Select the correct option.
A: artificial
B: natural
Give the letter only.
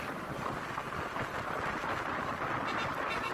B